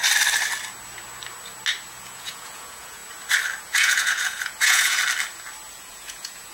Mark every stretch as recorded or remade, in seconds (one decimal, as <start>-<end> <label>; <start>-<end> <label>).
0.0-1.9 recorded; 1.9-3.0 remade; 3.0-3.6 recorded; 3.6-5.0 remade; 5.0-5.7 recorded; 5.7-6.5 remade